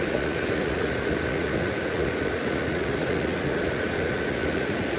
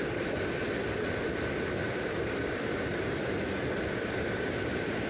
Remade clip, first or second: first